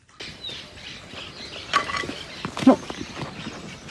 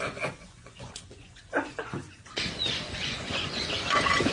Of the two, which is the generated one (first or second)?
second